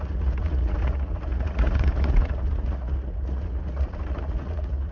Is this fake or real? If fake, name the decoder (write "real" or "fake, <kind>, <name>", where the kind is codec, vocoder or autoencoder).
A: fake, vocoder, Vocos